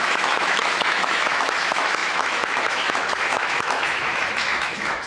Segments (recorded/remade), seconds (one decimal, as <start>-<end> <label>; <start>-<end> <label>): 0.0-5.1 remade